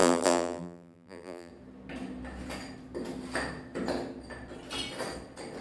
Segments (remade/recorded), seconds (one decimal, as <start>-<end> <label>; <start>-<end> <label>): 0.0-1.5 remade; 1.5-5.6 recorded